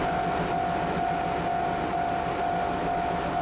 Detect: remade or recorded recorded